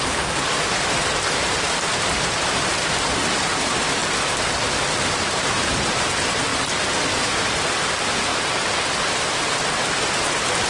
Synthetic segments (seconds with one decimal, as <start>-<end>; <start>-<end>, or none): 0.0-4.0; 5.2-8.3; 8.9-10.7